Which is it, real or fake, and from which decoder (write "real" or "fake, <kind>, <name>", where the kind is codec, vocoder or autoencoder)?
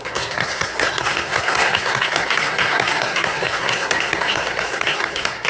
fake, codec, SNAC